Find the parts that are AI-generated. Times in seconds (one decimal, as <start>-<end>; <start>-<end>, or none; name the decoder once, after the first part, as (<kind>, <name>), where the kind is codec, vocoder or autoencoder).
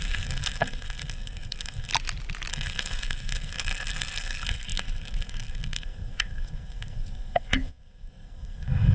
0.0-1.9 (codec, SNAC); 2.5-8.9